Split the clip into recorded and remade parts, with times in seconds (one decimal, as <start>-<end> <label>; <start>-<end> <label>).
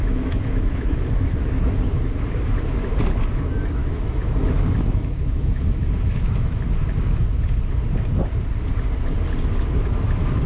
0.0-1.6 remade; 1.6-3.8 recorded; 3.8-6.5 remade; 6.5-10.5 recorded